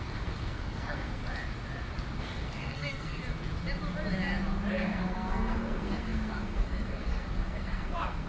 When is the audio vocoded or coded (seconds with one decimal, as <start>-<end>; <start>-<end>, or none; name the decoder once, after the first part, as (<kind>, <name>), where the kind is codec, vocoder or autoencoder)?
0.0-1.2 (codec, SNAC); 2.2-3.2; 4.7-8.3